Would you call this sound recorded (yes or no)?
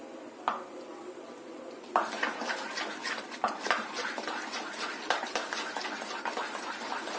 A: no